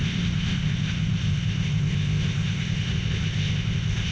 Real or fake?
fake